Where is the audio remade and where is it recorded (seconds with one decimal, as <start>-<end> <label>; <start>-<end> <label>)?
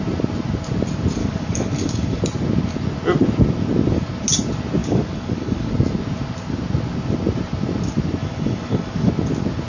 0.0-1.2 recorded; 1.2-2.2 remade; 2.2-4.8 recorded; 4.8-5.7 remade; 5.7-8.2 recorded; 8.2-9.1 remade; 9.1-9.7 recorded